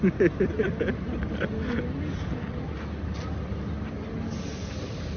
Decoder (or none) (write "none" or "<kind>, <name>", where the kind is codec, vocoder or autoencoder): none